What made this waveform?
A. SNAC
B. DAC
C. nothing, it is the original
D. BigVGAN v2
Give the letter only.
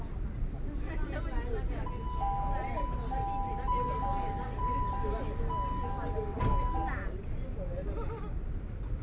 C